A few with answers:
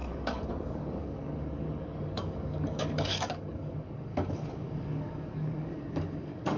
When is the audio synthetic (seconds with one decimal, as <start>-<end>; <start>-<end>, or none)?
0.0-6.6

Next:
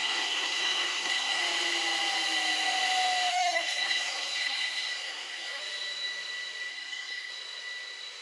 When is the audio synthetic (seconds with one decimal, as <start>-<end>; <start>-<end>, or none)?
0.0-1.4; 3.3-5.6; 6.7-7.3

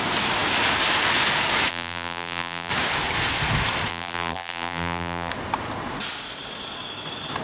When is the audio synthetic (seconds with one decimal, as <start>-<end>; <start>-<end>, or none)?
1.7-2.7; 3.9-5.3

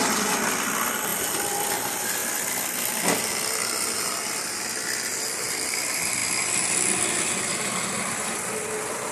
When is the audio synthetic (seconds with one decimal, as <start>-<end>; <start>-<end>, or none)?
none

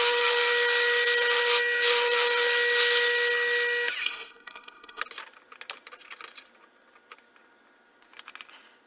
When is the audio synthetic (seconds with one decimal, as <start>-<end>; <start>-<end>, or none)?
4.0-5.0

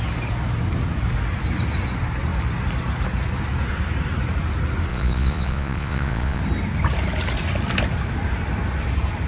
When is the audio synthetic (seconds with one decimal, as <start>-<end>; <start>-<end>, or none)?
4.9-6.4

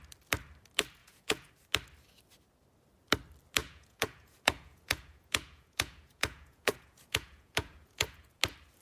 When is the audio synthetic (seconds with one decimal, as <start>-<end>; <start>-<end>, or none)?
1.0-1.5; 3.6-8.4

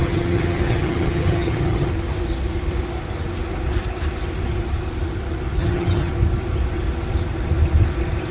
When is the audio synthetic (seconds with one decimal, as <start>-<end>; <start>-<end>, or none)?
0.0-1.9; 5.6-6.1